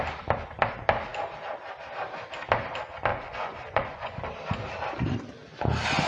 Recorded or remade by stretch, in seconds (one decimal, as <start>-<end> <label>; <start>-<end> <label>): 0.0-3.1 recorded; 3.1-4.2 remade; 4.2-6.1 recorded